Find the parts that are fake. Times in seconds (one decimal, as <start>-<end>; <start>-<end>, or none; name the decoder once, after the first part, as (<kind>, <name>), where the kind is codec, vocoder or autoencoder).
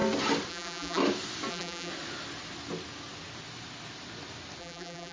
0.5-1.0 (vocoder, BigVGAN v2); 1.5-1.9; 4.6-5.1